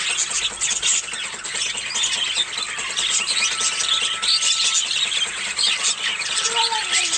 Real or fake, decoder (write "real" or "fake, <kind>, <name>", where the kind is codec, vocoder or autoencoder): real